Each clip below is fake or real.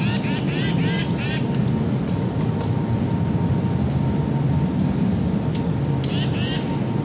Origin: real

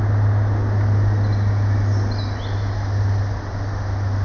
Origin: real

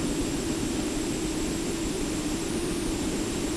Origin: real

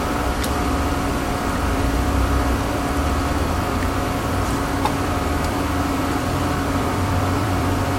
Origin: fake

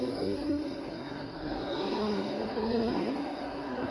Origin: fake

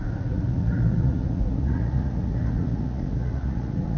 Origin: fake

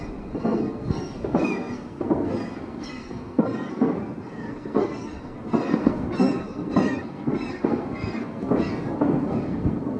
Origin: fake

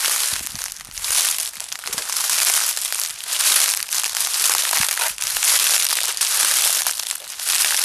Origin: real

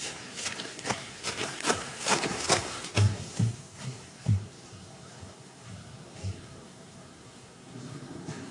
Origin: fake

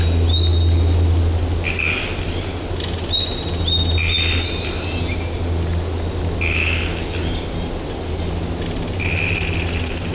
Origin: real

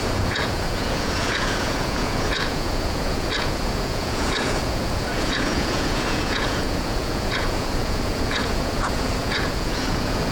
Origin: fake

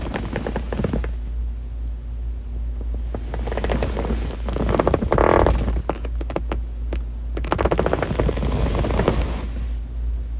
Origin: real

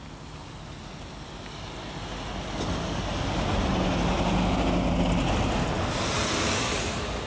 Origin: real